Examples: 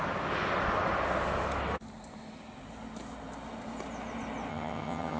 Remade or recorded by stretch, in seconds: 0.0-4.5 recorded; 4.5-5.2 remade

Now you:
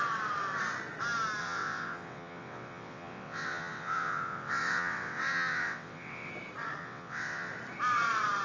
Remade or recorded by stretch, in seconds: 0.0-1.4 recorded; 1.4-6.3 remade; 6.3-6.8 recorded; 6.8-7.5 remade; 7.5-8.4 recorded

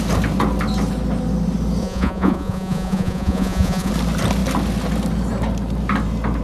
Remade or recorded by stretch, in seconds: 0.0-1.8 recorded; 1.8-3.9 remade; 3.9-6.4 recorded

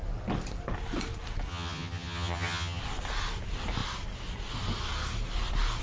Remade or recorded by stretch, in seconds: 0.0-1.5 recorded; 1.5-2.8 remade; 2.8-5.8 recorded

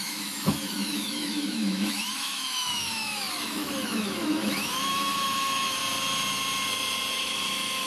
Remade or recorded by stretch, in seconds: 0.0-5.8 remade; 5.8-7.1 recorded; 7.1-7.9 remade

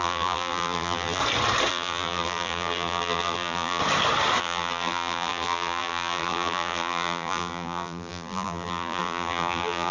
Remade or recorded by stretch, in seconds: 0.0-1.2 remade; 1.2-1.7 recorded; 1.7-3.8 remade; 3.8-4.4 recorded; 4.4-9.9 remade

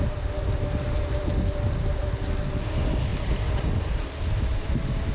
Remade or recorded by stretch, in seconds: 0.0-3.1 recorded; 3.1-5.1 remade